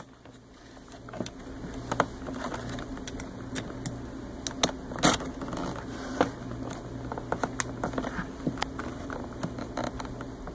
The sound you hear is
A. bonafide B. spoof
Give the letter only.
A